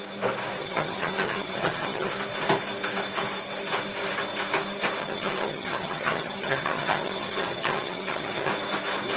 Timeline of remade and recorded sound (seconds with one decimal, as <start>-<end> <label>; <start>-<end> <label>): 0.0-0.6 recorded; 0.6-2.1 remade; 2.1-5.0 recorded; 5.0-8.5 remade; 8.5-9.2 recorded